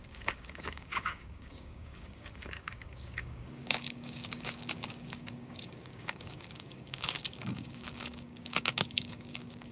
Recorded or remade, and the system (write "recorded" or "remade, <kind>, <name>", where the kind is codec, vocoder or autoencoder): remade, codec, DAC